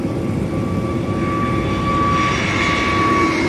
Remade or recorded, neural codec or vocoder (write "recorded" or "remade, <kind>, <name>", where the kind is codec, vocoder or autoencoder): recorded